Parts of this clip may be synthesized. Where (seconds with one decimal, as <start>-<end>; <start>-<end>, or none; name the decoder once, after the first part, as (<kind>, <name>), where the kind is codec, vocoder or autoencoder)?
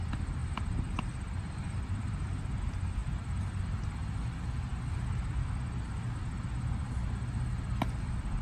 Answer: 0.4-2.6 (vocoder, BigVGAN v2); 3.0-3.5